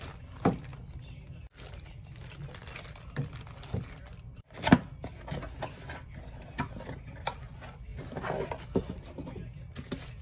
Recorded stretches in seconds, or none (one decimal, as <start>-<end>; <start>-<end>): 0.0-10.2